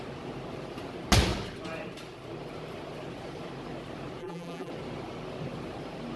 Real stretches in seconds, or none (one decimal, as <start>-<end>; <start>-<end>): 0.0-4.2; 4.7-6.2